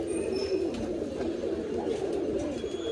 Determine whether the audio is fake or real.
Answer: real